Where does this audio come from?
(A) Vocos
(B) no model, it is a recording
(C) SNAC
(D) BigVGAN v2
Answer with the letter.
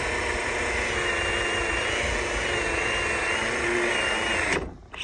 B